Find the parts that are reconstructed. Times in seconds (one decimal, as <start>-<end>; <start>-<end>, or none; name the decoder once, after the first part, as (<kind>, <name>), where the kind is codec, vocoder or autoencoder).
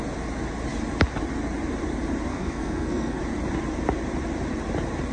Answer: 2.3-3.2 (codec, SNAC)